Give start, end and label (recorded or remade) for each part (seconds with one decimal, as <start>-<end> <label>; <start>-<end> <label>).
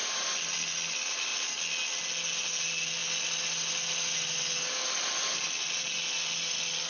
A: 0.0-6.9 recorded